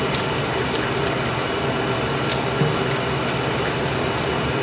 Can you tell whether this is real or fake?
real